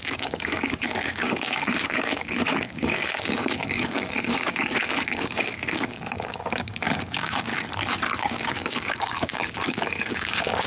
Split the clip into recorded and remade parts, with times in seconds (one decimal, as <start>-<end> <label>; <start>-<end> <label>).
0.0-7.5 remade; 7.5-8.2 recorded; 8.2-10.7 remade